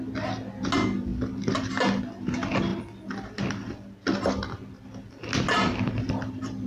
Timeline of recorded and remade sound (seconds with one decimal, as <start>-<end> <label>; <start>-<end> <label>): 0.0-6.7 recorded